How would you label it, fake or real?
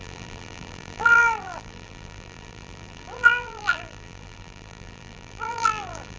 fake